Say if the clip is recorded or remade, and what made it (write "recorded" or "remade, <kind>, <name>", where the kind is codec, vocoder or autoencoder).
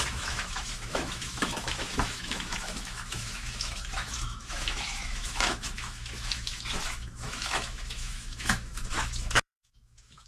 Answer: remade, autoencoder, DAC-VAE